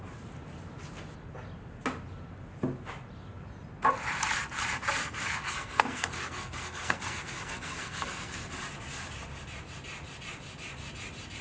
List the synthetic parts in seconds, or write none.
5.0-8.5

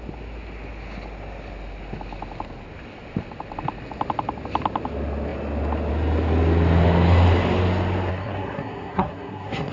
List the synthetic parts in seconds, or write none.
8.1-9.7